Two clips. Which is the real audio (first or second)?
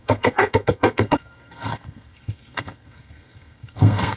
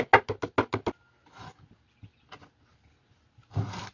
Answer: second